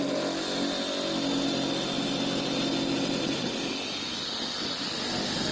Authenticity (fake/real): real